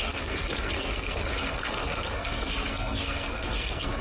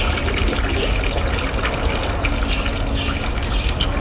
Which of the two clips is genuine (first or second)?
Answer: second